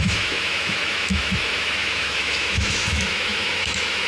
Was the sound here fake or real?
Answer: fake